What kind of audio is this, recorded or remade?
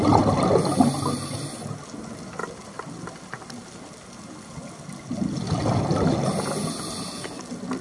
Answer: recorded